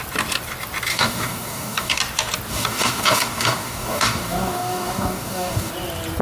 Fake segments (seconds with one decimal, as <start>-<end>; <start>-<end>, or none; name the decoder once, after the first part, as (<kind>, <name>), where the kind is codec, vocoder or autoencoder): 0.9-2.0 (codec, DAC); 2.5-5.7